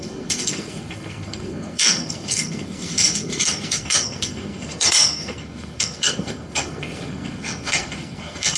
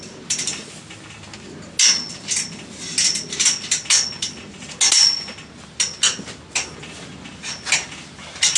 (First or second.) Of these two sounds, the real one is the second